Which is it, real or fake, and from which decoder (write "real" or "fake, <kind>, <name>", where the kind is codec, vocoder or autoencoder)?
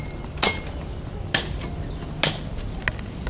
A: real